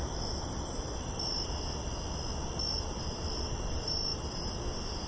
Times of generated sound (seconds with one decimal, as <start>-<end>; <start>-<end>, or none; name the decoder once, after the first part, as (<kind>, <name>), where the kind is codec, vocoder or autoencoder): none